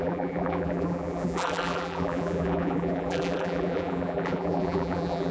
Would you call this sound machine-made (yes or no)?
yes